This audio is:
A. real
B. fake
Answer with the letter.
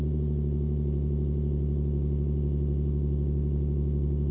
A